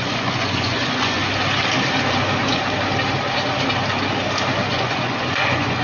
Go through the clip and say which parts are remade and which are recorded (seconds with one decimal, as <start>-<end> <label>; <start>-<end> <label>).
0.0-1.2 remade; 1.2-4.7 recorded; 4.7-5.8 remade